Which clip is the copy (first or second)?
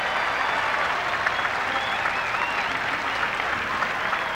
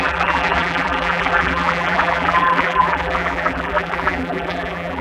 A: second